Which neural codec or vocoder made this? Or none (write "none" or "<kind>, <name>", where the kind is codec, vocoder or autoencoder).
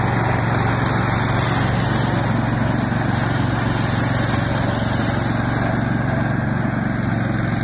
none